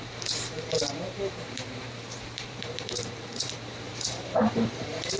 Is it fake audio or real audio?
fake